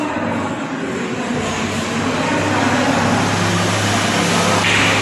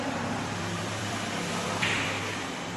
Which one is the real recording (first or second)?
first